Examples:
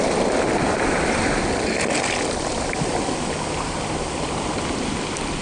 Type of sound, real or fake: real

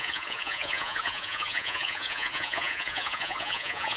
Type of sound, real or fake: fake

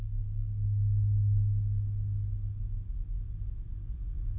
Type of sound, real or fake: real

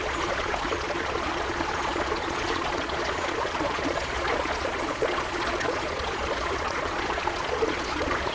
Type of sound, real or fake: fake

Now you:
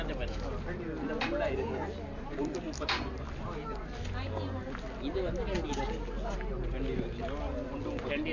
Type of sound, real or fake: real